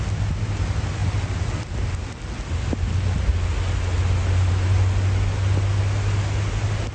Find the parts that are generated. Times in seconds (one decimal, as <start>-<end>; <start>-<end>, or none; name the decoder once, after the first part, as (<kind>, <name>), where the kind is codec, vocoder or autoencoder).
none